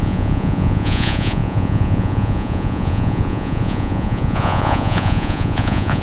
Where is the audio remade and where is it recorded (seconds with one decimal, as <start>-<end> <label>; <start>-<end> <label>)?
0.0-6.0 remade